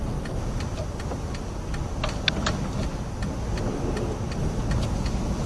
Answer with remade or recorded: recorded